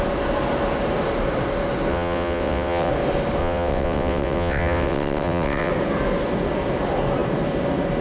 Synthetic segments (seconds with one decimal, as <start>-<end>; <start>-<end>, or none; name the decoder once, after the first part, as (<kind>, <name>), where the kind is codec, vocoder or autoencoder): 1.9-2.9 (vocoder, WaveNeXt); 3.4-5.7